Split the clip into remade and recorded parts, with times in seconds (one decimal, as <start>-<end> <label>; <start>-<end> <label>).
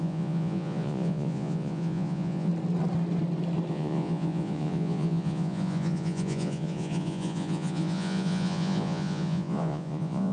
0.0-2.5 remade; 2.5-3.7 recorded; 3.7-10.3 remade